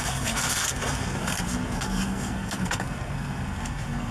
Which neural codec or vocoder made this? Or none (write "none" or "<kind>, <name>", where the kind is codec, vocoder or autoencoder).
codec, SNAC